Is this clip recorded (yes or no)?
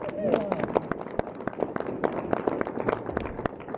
yes